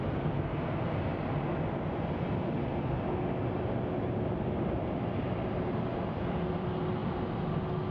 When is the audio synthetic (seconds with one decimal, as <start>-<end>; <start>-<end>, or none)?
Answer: none